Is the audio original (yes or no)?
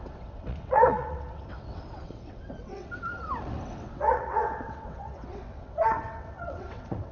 no